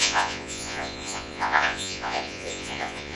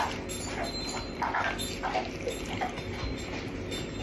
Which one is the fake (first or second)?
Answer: first